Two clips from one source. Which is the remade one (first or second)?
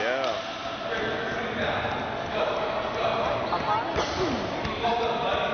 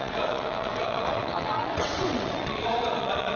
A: second